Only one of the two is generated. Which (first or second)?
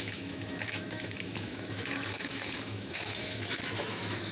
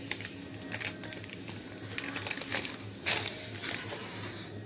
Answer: first